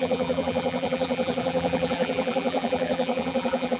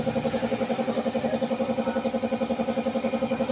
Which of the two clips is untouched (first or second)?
second